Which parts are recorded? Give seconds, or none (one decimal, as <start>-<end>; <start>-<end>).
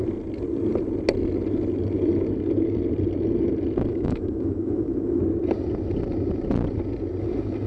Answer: 0.0-3.9; 5.2-7.7